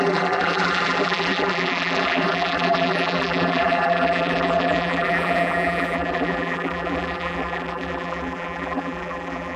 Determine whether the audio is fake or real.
fake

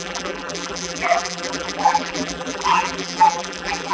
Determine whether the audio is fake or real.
fake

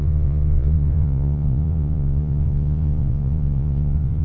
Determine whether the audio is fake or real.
fake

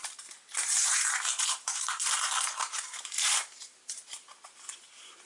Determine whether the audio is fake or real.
fake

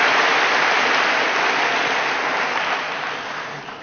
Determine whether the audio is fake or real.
real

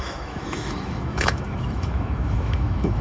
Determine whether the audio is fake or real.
fake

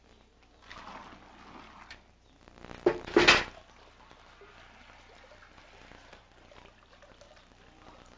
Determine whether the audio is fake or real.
real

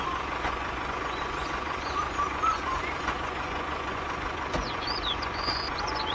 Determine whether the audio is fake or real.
fake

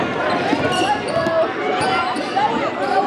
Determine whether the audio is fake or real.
real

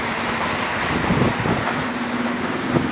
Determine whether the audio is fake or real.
real